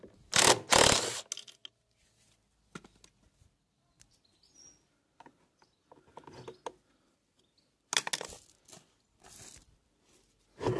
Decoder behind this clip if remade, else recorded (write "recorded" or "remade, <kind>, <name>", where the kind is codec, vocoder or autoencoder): recorded